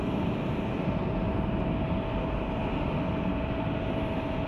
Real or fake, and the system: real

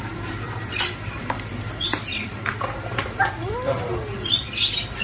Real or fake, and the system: fake, vocoder, BigVGAN v2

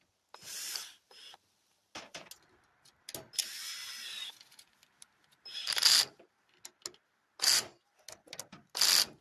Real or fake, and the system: real